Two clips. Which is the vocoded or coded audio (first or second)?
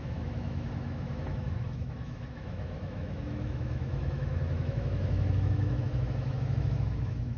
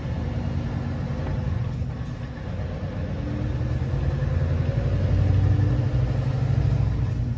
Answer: first